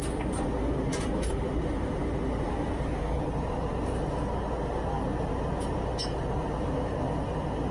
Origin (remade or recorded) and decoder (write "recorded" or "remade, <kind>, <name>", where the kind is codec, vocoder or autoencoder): recorded